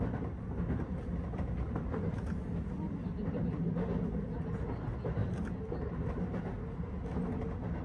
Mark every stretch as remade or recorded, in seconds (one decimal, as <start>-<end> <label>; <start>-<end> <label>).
0.0-7.8 recorded